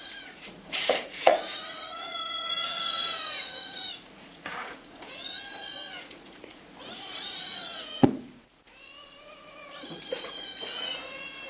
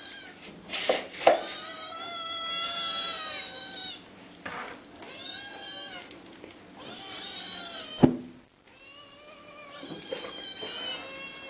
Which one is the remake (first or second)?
first